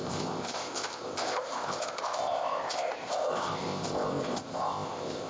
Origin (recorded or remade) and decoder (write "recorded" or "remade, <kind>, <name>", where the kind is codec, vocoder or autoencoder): remade, codec, ZipCodec